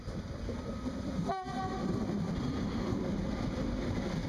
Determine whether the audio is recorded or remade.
recorded